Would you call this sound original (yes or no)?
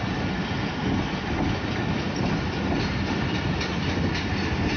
yes